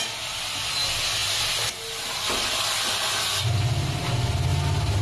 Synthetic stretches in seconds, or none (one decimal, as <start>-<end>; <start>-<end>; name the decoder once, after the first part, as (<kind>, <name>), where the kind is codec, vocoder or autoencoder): none